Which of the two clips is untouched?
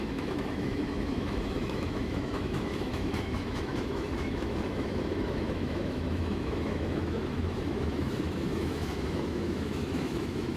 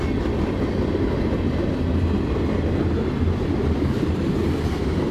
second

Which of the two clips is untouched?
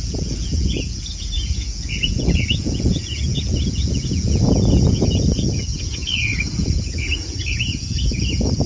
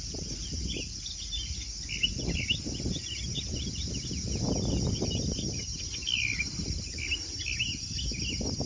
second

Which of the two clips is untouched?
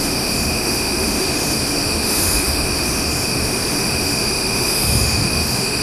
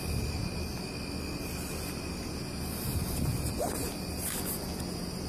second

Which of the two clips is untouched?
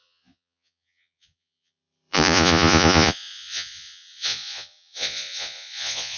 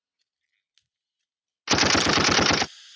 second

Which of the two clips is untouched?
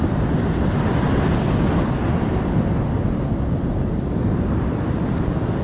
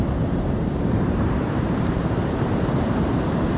first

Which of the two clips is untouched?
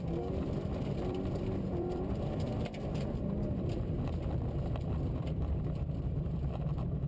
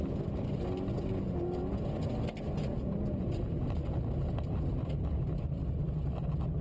second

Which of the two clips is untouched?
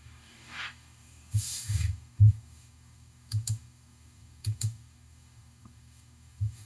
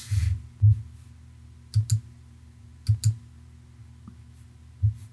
second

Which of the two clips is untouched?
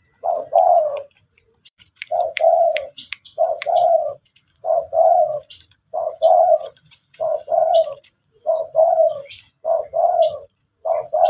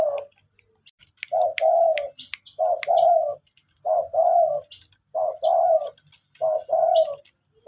second